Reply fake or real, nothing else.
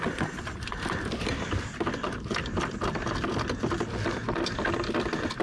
real